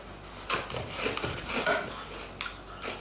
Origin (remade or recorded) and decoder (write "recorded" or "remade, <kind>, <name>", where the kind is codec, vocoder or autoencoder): recorded